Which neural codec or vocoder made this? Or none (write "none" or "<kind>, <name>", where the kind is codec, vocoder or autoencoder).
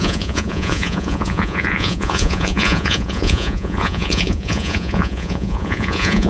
vocoder, Vocos